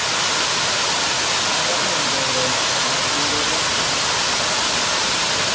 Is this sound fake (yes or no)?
no